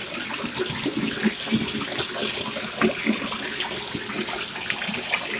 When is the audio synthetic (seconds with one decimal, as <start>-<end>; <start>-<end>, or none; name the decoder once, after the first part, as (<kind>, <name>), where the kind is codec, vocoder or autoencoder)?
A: none